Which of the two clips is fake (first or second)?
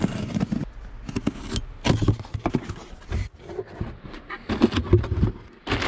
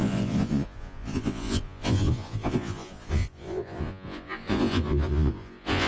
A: second